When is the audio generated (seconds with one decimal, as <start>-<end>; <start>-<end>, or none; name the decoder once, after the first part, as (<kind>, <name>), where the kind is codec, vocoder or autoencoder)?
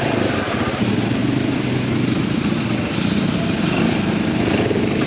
0.0-1.2 (vocoder, BigVGAN v2); 4.3-5.1